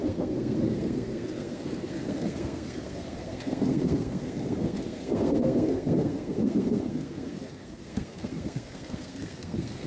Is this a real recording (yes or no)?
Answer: no